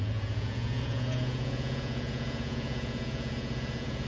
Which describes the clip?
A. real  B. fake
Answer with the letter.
B